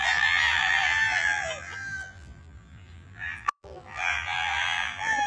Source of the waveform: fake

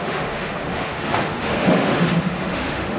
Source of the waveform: fake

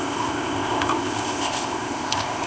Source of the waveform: fake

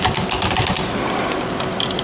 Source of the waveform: real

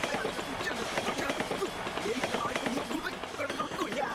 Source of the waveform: real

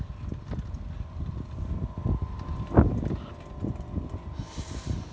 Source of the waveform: real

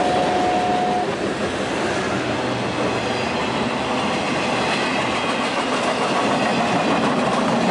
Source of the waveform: real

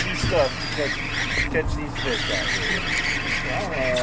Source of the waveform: real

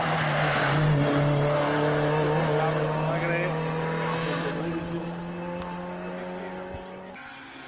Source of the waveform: real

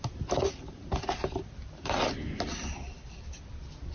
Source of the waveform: real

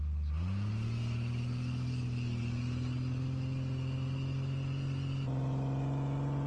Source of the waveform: real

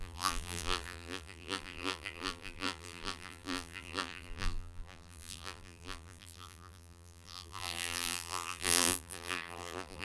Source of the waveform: fake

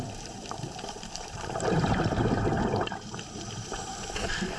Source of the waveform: fake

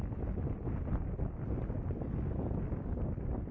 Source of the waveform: real